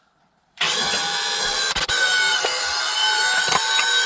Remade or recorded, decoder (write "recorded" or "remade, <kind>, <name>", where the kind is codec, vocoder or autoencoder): remade, vocoder, BigVGAN v2